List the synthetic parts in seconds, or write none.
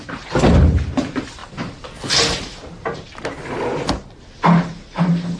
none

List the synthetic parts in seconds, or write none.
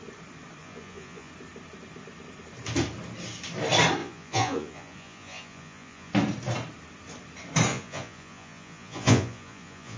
0.6-1.3 (vocoder, Vocos); 4.0-6.1; 7.7-10.0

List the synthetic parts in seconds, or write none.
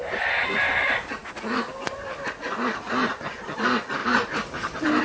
4.0-5.0 (vocoder, BigVGAN v2)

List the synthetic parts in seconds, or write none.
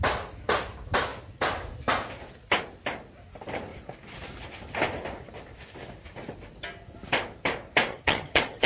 7.9-8.7 (vocoder, HiFi-GAN)